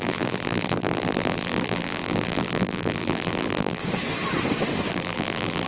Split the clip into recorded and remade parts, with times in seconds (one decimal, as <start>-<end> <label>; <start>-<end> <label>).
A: 0.0-3.8 remade; 3.8-4.9 recorded; 4.9-5.7 remade

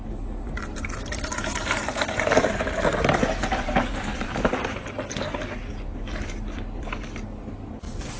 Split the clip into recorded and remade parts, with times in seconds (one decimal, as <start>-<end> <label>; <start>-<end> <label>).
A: 0.0-0.7 recorded; 0.7-4.9 remade; 4.9-8.2 recorded

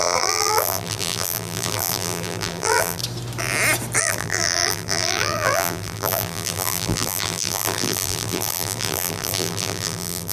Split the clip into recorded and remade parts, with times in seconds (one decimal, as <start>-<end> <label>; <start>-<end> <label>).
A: 0.0-3.0 remade; 3.0-4.0 recorded; 4.0-10.3 remade